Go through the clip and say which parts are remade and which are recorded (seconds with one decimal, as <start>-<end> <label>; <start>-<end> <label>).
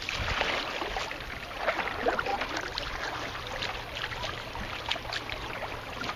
0.0-2.3 recorded; 2.3-6.2 remade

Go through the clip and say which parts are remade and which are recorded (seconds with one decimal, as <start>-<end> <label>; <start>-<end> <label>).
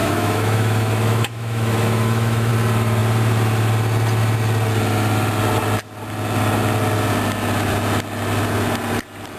0.0-2.5 remade; 2.5-9.4 recorded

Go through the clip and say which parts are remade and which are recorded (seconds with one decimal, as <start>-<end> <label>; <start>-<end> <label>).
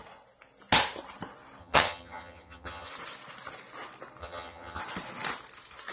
0.0-1.6 recorded; 1.6-2.9 remade; 2.9-4.2 recorded; 4.2-4.8 remade; 4.8-5.9 recorded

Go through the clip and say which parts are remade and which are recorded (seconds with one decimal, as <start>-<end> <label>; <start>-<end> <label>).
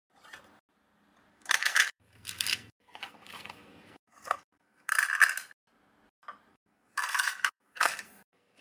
0.0-1.3 recorded; 1.3-4.9 remade; 4.9-6.5 recorded; 6.5-8.6 remade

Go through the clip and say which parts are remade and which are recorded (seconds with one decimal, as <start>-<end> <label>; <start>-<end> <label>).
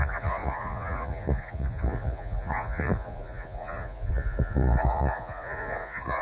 0.0-6.2 remade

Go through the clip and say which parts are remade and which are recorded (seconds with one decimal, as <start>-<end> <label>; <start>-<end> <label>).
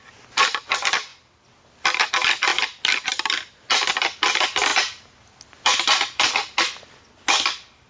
0.0-7.9 recorded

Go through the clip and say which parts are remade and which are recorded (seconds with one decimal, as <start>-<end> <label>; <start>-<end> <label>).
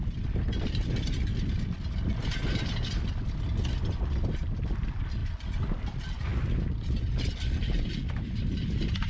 0.0-9.1 recorded